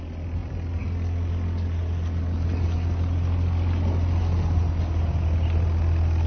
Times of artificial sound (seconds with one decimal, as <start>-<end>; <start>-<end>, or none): none